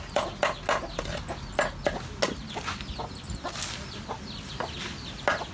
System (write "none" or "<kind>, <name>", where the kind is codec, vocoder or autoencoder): none